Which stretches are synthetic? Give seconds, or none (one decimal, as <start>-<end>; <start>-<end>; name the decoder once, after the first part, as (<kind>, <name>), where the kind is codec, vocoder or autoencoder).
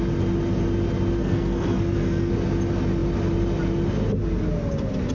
1.2-2.3 (codec, SNAC)